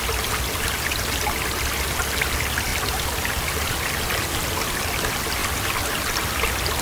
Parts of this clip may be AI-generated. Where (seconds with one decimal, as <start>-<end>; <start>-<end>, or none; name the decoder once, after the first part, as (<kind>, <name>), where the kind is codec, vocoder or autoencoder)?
none